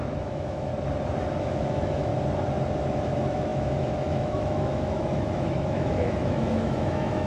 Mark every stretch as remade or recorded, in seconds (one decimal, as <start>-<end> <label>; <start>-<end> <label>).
0.0-0.7 remade; 0.7-1.4 recorded; 1.4-2.1 remade; 2.1-2.8 recorded; 2.8-7.3 remade